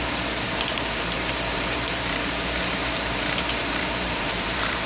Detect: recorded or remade remade